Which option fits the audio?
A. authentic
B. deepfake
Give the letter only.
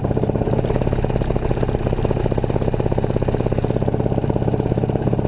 A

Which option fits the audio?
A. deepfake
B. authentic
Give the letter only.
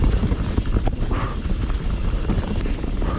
B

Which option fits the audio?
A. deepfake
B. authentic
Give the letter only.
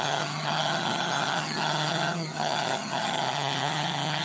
A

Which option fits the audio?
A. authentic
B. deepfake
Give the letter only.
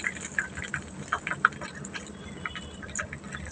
A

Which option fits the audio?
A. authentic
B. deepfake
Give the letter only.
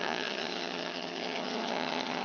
B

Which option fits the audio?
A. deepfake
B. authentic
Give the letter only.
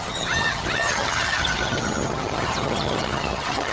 A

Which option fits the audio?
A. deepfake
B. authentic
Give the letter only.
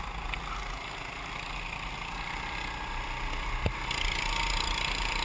B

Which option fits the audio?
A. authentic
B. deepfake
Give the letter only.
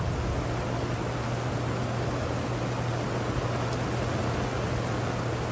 A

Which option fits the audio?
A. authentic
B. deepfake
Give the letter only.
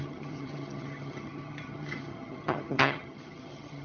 B